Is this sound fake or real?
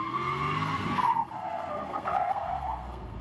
fake